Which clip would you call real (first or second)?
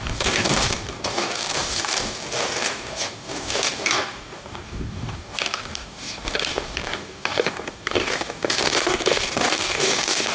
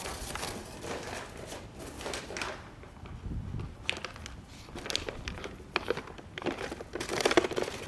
second